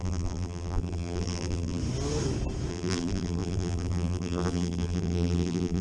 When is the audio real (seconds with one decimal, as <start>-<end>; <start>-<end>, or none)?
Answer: 1.8-2.7